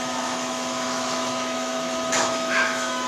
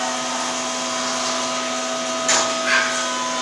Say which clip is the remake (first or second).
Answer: first